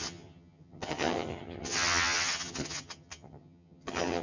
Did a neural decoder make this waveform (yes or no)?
yes